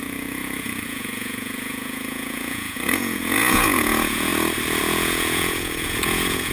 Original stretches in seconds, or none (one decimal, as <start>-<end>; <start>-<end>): 4.3-4.8